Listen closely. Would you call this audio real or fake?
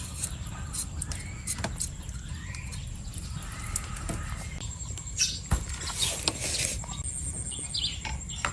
real